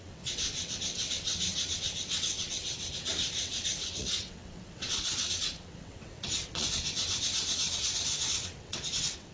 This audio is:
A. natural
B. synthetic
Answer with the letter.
B